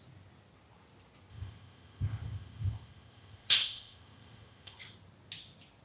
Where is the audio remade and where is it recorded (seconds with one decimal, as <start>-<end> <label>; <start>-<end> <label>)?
0.0-1.3 recorded; 1.3-4.8 remade; 4.8-5.8 recorded